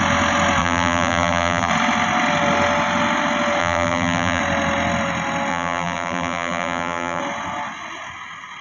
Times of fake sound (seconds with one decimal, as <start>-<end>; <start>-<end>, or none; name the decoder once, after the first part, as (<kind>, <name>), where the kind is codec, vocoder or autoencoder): 0.6-1.7 (vocoder, BigVGAN v2); 3.6-4.4; 5.5-7.2